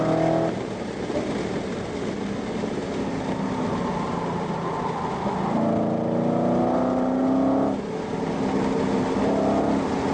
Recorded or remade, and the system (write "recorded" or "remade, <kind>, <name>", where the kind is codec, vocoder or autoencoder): recorded